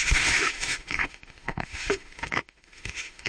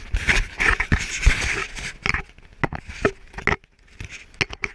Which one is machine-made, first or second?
first